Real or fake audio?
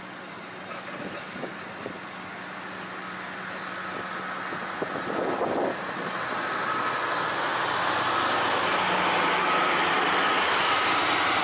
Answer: real